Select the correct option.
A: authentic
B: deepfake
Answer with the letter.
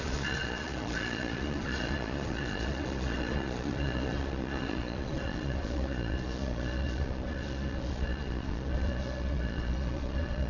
B